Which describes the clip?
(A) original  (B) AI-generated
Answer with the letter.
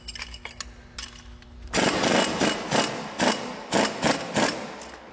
A